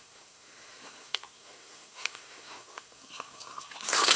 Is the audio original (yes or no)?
no